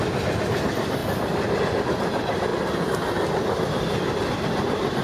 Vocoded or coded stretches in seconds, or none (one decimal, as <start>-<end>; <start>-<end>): none